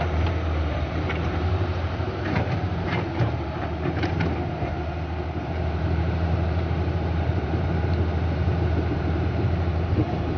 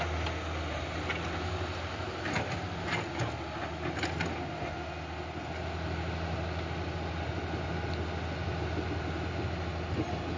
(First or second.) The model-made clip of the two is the first